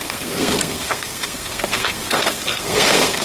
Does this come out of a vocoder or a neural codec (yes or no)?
yes